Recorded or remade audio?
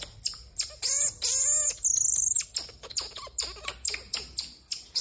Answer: recorded